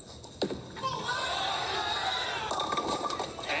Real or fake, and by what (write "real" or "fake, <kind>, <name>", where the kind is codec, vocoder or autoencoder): real